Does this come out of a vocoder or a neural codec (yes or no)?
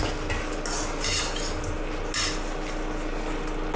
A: no